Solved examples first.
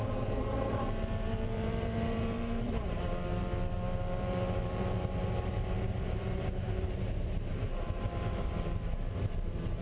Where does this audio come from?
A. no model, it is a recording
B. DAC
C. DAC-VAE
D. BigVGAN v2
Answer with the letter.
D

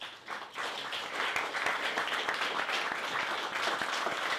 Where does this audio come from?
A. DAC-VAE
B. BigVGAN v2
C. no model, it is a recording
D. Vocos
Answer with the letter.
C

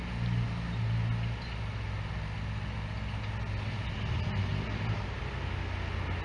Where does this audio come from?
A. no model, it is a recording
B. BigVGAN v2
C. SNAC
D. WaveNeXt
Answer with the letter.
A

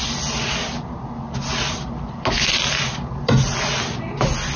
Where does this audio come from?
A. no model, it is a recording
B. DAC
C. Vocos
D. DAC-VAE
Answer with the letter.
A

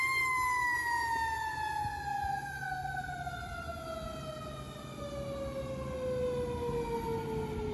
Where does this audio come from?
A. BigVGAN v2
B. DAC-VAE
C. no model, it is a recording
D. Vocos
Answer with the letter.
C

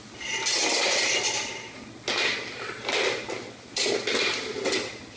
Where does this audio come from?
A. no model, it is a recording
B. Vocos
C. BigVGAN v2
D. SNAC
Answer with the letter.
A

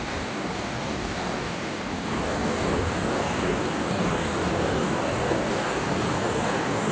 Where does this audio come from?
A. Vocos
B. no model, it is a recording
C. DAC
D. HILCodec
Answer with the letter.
C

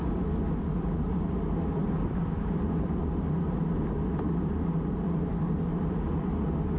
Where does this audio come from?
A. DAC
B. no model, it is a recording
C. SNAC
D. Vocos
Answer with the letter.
B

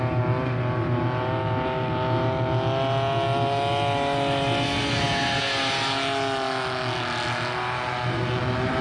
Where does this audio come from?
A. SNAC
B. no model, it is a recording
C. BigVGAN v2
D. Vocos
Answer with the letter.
B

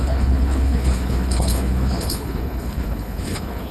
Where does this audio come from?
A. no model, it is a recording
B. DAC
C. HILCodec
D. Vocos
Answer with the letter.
C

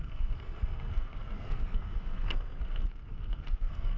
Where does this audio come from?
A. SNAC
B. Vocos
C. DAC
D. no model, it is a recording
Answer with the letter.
A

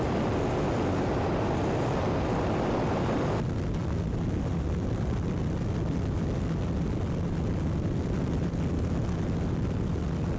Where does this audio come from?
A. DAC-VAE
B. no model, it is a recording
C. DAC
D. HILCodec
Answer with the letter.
B